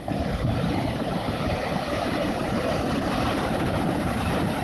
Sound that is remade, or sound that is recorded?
remade